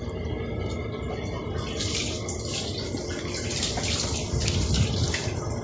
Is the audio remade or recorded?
recorded